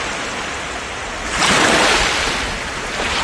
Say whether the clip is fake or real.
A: real